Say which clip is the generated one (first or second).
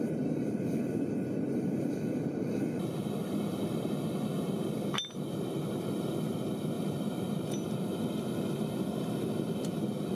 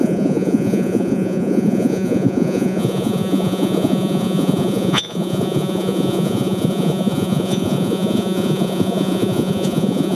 second